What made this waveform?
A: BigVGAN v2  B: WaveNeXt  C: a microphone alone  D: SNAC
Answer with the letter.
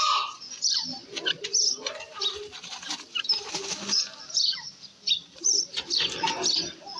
A